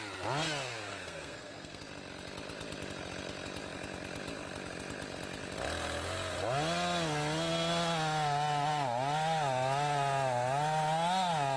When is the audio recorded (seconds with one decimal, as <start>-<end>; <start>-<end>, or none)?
0.0-0.9; 1.8-11.6